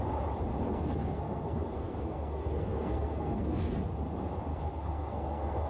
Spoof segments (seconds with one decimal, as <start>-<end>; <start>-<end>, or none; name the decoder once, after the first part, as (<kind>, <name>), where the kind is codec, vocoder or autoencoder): 0.5-3.8 (codec, SNAC); 4.5-5.7